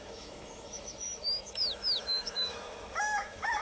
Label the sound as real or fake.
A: fake